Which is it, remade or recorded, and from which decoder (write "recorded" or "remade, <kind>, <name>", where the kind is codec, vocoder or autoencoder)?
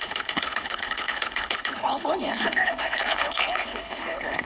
remade, codec, HILCodec